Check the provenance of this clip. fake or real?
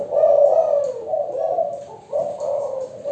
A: real